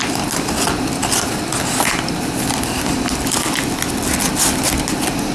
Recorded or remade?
recorded